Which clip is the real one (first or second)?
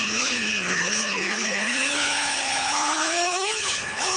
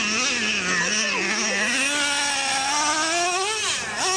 second